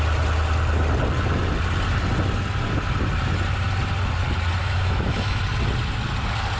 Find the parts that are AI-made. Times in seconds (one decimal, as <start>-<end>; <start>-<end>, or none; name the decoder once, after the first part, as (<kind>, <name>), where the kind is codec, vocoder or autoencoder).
4.6-5.4 (autoencoder, DAC-VAE)